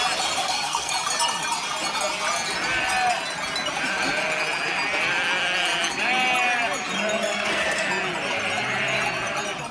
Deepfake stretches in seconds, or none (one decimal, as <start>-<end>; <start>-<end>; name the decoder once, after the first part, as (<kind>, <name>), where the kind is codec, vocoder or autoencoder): 0.4-0.9 (codec, SNAC); 7.3-7.9